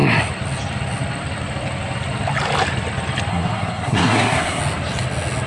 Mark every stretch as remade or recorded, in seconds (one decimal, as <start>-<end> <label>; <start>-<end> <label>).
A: 0.0-3.3 recorded; 3.3-4.6 remade; 4.6-5.5 recorded

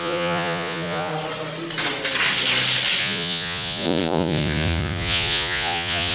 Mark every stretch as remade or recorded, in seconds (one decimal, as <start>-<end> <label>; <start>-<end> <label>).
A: 0.0-1.1 remade; 1.1-3.0 recorded; 3.0-6.1 remade

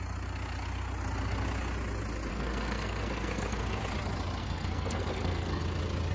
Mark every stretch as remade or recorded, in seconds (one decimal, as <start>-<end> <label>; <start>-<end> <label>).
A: 0.0-2.3 recorded; 2.3-3.8 remade; 3.8-4.4 recorded; 4.4-5.6 remade; 5.6-6.1 recorded

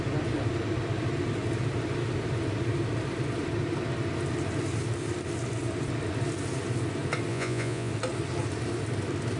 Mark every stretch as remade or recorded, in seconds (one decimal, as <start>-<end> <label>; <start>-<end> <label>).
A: 0.0-7.3 recorded; 7.3-7.9 remade; 7.9-9.4 recorded

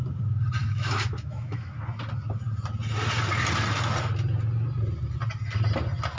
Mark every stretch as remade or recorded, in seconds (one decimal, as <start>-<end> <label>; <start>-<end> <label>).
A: 0.0-0.6 recorded; 0.6-1.7 remade; 1.7-6.2 recorded

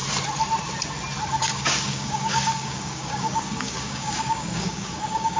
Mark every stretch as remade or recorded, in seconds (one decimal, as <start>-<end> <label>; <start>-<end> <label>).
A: 0.0-1.4 recorded; 1.4-5.4 remade